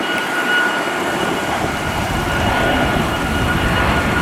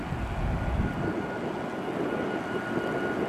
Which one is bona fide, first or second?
second